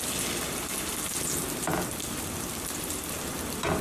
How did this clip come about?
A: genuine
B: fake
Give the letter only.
A